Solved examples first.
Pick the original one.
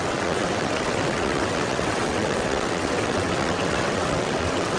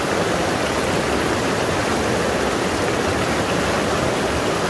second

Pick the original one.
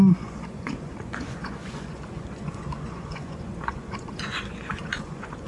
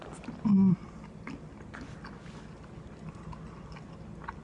second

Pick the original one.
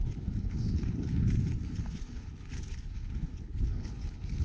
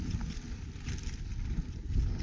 second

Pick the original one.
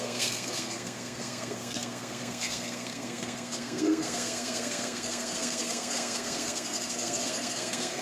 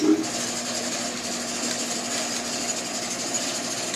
second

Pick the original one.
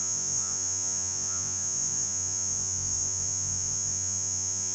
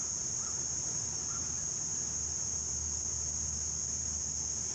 second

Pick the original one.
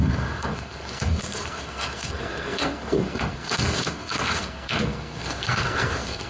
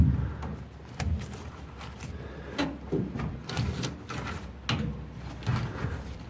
second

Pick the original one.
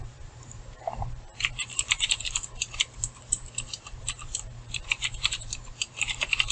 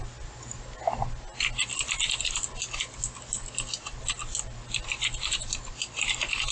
second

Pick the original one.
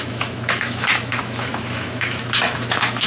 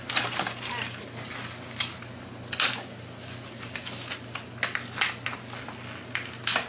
second